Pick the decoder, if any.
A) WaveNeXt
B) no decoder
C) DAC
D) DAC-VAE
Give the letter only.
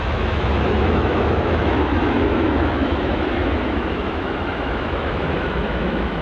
D